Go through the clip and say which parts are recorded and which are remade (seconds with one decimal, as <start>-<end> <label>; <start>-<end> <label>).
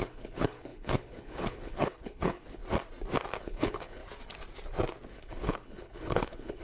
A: 0.0-2.6 remade; 2.6-3.4 recorded; 3.4-4.0 remade; 4.0-5.1 recorded; 5.1-6.6 remade